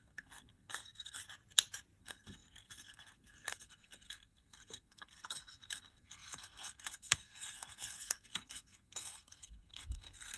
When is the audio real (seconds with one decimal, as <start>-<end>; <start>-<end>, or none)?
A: 1.2-2.0